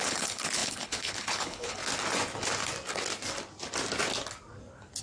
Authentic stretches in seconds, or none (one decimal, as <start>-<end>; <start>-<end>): 1.8-5.0